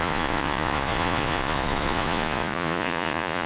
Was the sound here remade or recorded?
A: remade